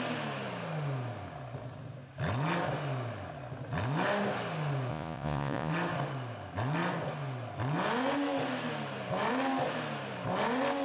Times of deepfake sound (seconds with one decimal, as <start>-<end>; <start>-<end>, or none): 4.9-5.7